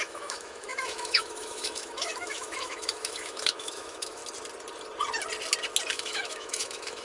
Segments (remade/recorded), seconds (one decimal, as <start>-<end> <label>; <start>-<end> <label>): 0.0-4.2 remade; 4.2-5.9 recorded; 5.9-7.0 remade